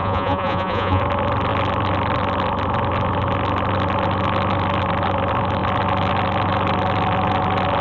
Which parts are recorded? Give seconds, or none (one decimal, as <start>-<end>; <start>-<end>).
1.0-7.8

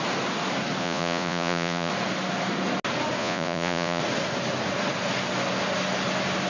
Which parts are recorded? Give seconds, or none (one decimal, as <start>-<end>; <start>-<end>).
0.0-0.8; 1.9-3.2; 4.0-6.5

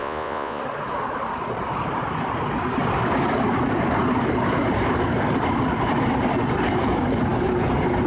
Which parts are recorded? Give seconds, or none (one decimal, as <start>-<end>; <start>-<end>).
0.6-8.1

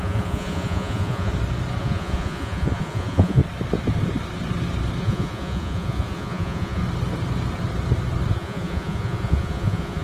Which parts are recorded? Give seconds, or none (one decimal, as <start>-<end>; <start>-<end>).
1.3-1.8; 3.4-5.0; 6.8-8.3